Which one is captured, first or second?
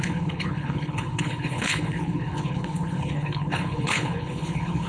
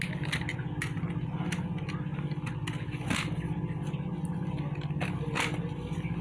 second